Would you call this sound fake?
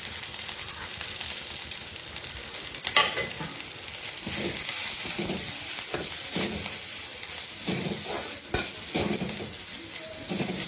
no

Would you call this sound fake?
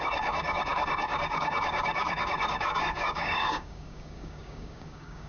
yes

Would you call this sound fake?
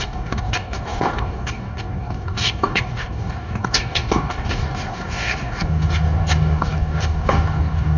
yes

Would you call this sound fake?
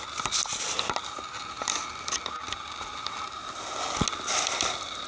no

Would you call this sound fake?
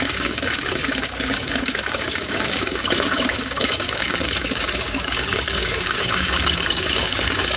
yes